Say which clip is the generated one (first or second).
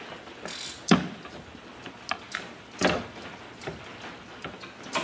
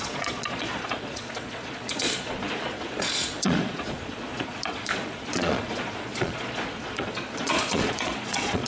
second